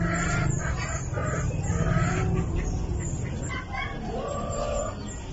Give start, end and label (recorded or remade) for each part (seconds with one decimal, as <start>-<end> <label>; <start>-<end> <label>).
0.0-1.2 recorded; 1.2-3.4 remade; 3.4-5.3 recorded

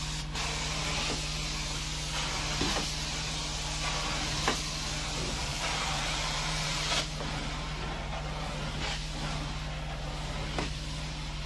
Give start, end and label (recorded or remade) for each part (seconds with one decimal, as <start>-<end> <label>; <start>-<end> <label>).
0.0-5.5 recorded; 5.5-6.9 remade; 6.9-11.5 recorded